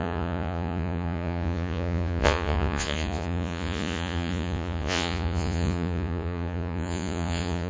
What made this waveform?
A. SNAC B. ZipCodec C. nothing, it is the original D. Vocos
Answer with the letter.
D